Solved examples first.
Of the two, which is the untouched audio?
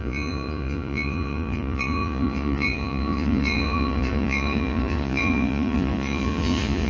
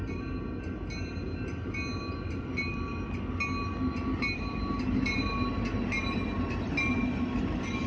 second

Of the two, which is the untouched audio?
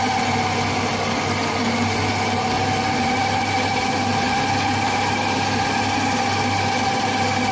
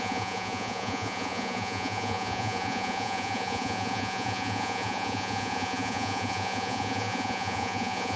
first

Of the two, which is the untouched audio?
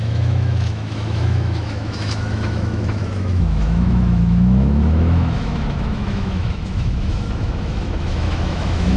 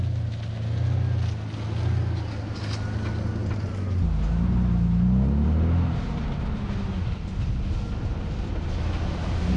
second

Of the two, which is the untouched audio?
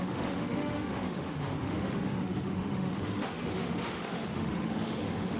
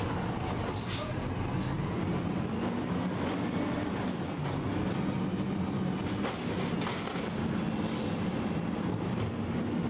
second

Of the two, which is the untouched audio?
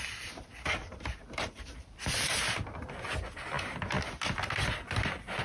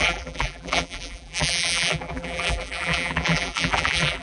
first